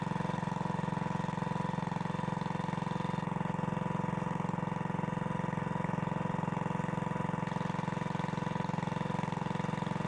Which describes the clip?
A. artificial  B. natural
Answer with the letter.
B